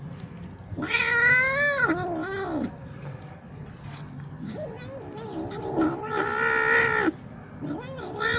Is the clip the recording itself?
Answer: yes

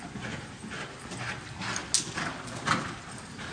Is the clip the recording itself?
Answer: yes